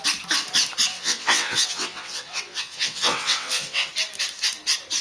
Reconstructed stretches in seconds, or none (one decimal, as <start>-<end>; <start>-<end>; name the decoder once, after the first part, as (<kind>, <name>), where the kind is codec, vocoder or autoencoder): 0.9-3.9 (vocoder, WaveNeXt)